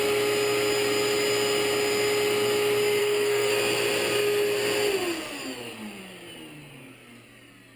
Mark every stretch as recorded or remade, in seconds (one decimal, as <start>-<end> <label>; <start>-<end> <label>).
0.0-3.0 recorded; 3.0-3.5 remade; 3.5-7.8 recorded